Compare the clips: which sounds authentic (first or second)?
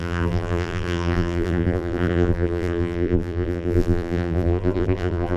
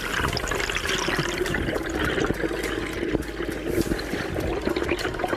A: second